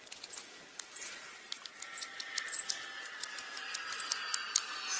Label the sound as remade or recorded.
recorded